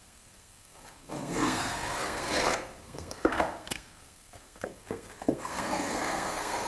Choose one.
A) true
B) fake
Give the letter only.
B